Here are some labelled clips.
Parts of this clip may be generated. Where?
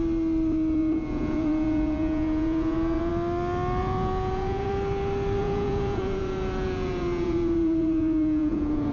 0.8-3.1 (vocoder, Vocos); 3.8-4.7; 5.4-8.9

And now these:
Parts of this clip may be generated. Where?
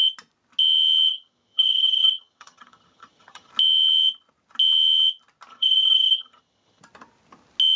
1.1-3.5 (vocoder, HiFi-GAN); 5.5-6.8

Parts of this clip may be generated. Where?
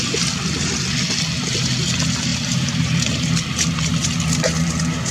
2.3-3.1 (vocoder, BigVGAN v2)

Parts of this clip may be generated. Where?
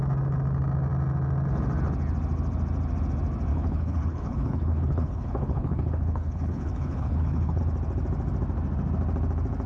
3.5-7.6 (codec, HILCodec)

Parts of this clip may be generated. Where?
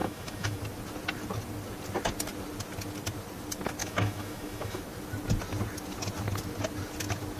0.0-0.6 (autoencoder, DAC-VAE); 3.8-4.8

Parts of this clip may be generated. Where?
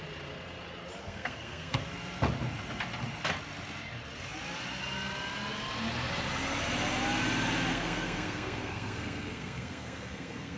1.0-1.8 (codec, SNAC); 7.7-10.6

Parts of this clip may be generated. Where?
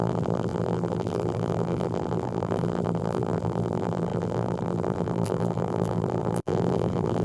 0.0-7.2 (vocoder, BigVGAN v2)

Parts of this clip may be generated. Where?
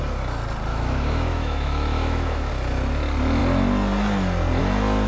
0.7-2.5 (autoencoder, DAC-VAE)